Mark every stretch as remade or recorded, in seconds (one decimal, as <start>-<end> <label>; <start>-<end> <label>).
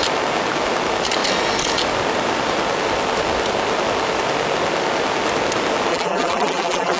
0.0-5.9 recorded; 5.9-7.0 remade